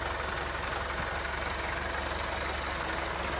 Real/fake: real